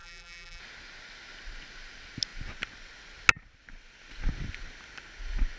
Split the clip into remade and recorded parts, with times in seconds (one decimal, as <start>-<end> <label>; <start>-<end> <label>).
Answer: 0.0-0.6 remade; 0.6-5.6 recorded